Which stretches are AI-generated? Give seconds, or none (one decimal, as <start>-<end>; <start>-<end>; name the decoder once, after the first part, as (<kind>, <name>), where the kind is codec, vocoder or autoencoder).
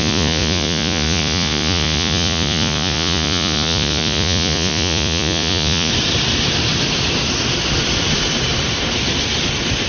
0.0-5.9 (vocoder, Vocos)